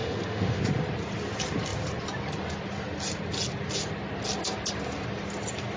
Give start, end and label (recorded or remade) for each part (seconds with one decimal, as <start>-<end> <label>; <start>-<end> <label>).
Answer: 0.0-0.6 remade; 0.6-5.8 recorded